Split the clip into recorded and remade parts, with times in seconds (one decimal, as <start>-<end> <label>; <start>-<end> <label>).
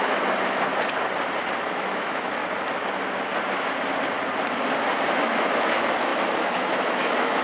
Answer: 0.0-0.7 remade; 0.7-1.7 recorded; 1.7-2.4 remade; 2.4-5.2 recorded; 5.2-7.4 remade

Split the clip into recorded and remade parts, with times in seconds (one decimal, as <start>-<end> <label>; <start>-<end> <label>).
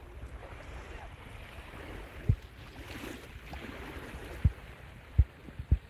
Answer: 0.0-4.2 recorded; 4.2-5.0 remade; 5.0-5.4 recorded; 5.4-5.9 remade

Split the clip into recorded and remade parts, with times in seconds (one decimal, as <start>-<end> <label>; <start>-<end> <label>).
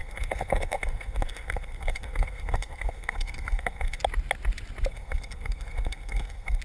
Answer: 0.0-4.0 remade; 4.0-4.9 recorded; 4.9-6.6 remade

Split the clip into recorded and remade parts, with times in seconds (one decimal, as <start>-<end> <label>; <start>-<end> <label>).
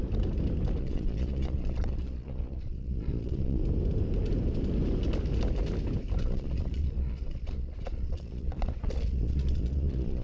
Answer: 0.0-0.8 recorded; 0.8-3.6 remade; 3.6-6.2 recorded; 6.2-10.2 remade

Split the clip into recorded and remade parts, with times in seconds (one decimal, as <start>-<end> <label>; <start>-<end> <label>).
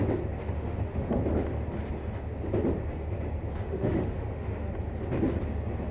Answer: 0.0-0.4 recorded; 0.4-1.1 remade; 1.1-3.6 recorded; 3.6-4.7 remade; 4.7-5.9 recorded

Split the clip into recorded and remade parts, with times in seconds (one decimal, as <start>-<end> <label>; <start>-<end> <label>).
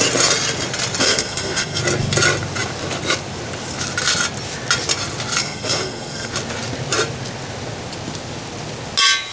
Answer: 0.0-1.0 recorded; 1.0-1.8 remade; 1.8-5.4 recorded; 5.4-6.3 remade; 6.3-9.3 recorded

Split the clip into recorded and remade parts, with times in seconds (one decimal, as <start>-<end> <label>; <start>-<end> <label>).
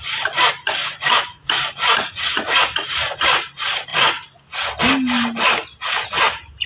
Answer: 0.0-0.8 recorded; 0.8-1.5 remade; 1.5-2.0 recorded; 2.0-3.2 remade; 3.2-6.7 recorded